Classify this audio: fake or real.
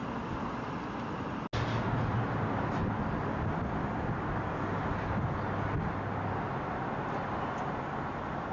real